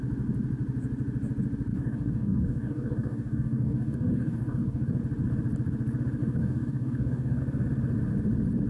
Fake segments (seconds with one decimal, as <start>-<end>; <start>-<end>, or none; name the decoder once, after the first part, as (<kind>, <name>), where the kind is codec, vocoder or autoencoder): 1.7-5.0 (codec, DAC); 6.2-7.4